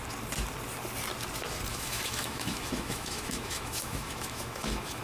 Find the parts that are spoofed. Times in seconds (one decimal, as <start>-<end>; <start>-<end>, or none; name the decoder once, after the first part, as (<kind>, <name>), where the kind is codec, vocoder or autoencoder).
1.7-5.0 (autoencoder, DAC-VAE)